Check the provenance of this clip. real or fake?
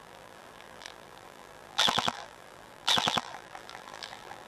fake